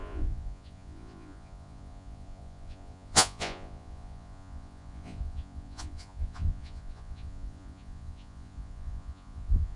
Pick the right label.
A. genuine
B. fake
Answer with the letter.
B